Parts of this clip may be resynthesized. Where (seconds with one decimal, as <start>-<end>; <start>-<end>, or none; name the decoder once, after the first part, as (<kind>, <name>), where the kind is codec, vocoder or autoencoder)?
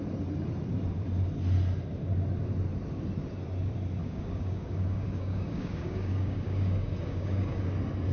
4.0-7.6 (codec, DAC)